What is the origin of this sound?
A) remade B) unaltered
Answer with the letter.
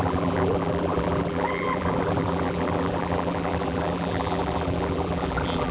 A